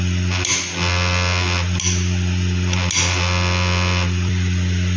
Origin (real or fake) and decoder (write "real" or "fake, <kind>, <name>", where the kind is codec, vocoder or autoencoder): real